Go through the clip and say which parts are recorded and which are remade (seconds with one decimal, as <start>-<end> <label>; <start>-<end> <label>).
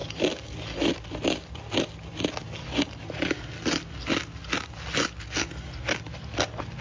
0.0-6.8 recorded